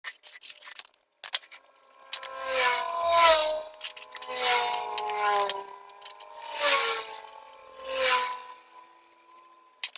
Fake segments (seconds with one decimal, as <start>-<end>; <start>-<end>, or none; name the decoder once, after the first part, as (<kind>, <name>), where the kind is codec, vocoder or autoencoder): none